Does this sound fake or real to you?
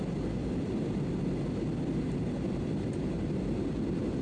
real